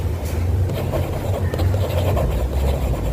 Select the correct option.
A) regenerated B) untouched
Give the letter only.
B